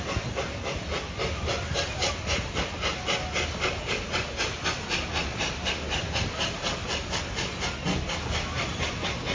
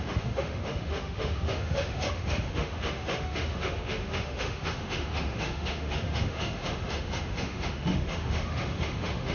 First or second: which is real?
first